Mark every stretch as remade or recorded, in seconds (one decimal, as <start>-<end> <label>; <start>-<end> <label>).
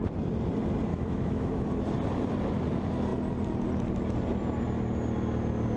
0.0-0.9 recorded; 0.9-1.5 remade; 1.5-5.8 recorded